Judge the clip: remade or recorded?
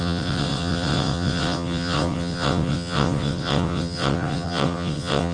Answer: remade